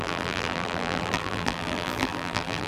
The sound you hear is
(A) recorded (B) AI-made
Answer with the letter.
B